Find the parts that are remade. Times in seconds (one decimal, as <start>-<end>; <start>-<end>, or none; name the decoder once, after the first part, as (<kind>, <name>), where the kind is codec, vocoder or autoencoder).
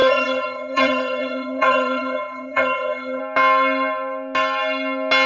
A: 0.0-3.2 (vocoder, HiFi-GAN)